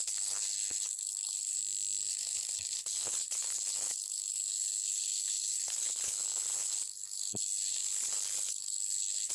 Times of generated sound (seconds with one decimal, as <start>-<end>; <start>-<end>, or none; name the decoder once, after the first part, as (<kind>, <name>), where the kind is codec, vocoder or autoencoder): 0.0-1.6 (codec, HILCodec); 2.1-9.3